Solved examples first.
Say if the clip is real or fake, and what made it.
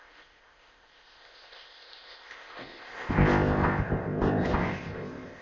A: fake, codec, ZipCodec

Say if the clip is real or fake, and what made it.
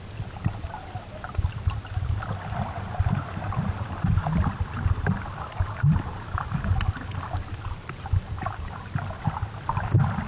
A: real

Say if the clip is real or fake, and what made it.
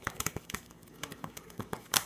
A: fake, codec, DAC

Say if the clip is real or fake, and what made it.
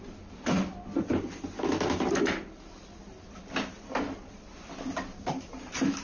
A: real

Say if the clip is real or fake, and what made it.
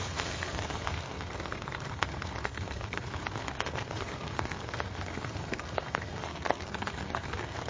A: fake, codec, SNAC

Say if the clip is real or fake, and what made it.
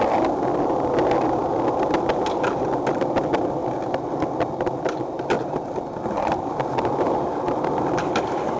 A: real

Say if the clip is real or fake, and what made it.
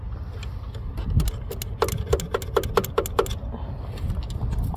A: real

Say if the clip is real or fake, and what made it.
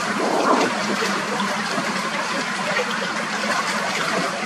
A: fake, vocoder, BigVGAN v2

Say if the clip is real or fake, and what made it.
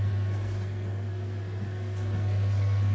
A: fake, codec, SNAC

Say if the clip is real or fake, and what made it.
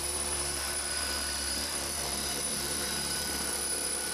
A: fake, vocoder, BigVGAN v2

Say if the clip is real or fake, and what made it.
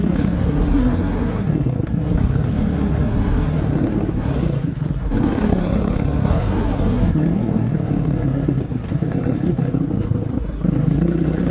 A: fake, codec, SNAC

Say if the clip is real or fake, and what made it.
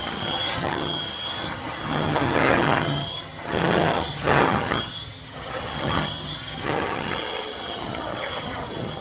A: fake, vocoder, HiFi-GAN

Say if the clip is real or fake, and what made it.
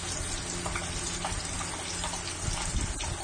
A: real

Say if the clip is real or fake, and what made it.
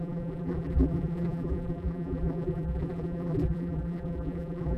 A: fake, vocoder, BigVGAN v2